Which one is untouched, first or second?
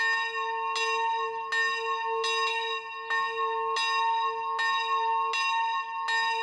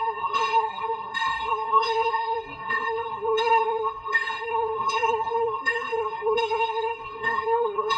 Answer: first